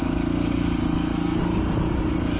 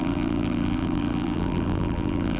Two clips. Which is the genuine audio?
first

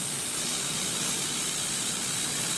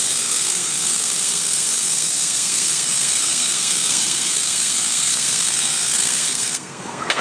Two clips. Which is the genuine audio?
first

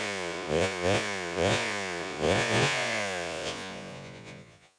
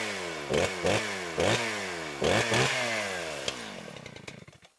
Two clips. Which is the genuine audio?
second